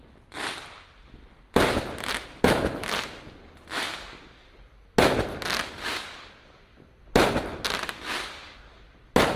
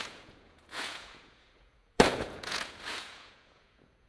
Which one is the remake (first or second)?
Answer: second